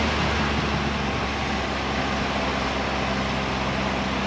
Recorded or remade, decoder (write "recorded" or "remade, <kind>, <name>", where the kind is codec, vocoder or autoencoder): recorded